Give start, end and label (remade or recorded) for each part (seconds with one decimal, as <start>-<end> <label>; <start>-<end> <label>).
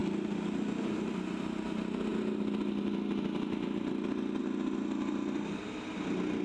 0.0-1.4 remade; 1.4-2.1 recorded; 2.1-2.8 remade; 2.8-6.4 recorded